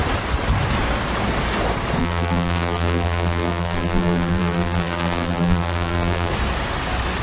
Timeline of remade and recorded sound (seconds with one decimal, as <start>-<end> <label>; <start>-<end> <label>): 0.0-2.0 recorded; 2.0-6.3 remade; 6.3-7.2 recorded